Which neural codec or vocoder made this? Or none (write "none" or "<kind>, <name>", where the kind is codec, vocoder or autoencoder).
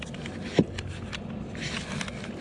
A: none